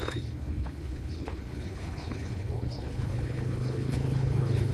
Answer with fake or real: fake